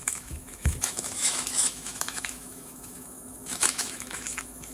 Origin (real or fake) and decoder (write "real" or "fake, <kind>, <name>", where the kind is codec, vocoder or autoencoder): fake, autoencoder, DAC-VAE